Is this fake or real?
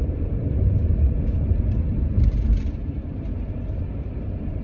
fake